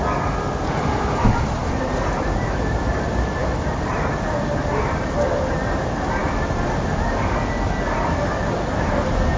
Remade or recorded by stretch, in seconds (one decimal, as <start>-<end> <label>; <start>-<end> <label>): 0.0-9.4 recorded